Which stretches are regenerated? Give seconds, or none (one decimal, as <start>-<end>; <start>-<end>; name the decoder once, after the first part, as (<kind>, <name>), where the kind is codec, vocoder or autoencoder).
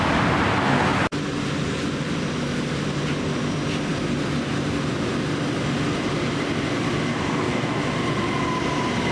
7.1-7.8 (codec, DAC)